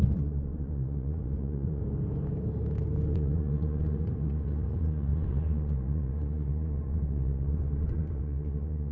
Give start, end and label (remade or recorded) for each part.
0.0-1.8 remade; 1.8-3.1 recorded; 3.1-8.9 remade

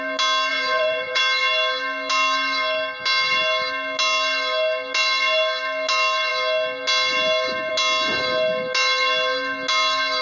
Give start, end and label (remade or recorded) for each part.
0.0-0.5 recorded; 0.5-1.2 remade; 1.2-10.2 recorded

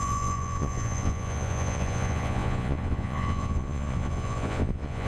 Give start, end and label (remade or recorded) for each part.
0.0-5.1 remade

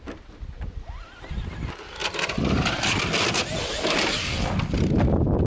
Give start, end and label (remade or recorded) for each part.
0.0-5.5 recorded

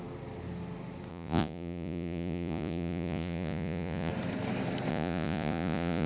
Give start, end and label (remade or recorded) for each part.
0.0-1.1 recorded; 1.1-4.1 remade; 4.1-4.9 recorded; 4.9-6.1 remade

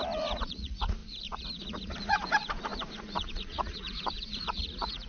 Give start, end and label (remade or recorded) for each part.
0.0-5.1 remade

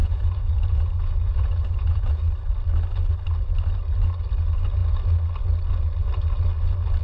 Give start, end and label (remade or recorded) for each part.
0.0-2.2 remade; 2.2-7.0 recorded